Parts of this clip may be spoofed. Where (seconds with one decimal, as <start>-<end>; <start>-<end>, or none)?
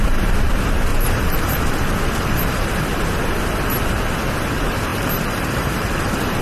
0.9-2.8; 4.9-6.4